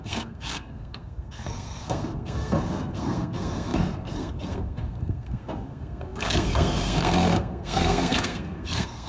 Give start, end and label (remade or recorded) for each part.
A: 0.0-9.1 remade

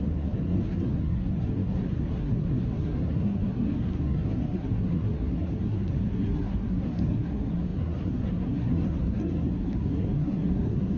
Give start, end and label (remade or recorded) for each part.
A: 0.0-11.0 remade

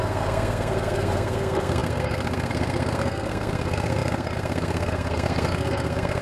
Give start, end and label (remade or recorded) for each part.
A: 0.0-6.2 remade

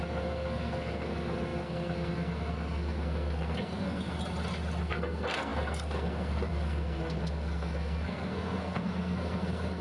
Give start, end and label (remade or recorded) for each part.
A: 0.0-4.2 remade; 4.2-4.8 recorded; 4.8-9.8 remade